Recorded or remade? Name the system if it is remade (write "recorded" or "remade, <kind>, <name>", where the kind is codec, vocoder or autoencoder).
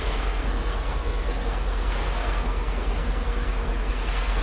remade, codec, SNAC